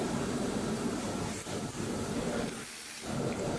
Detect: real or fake fake